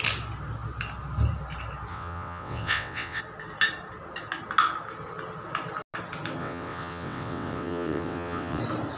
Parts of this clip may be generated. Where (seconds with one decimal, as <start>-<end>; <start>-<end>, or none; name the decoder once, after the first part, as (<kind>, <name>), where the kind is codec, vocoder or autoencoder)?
1.9-3.2 (vocoder, WaveNeXt); 6.4-8.6